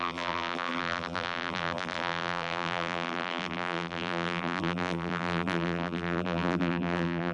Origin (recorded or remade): remade